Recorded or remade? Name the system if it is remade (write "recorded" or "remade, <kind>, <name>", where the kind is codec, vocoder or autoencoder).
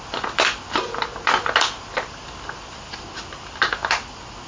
recorded